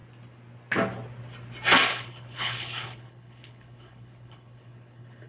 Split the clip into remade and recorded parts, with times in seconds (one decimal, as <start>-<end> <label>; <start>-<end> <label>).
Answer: 0.0-1.9 recorded; 1.9-5.3 remade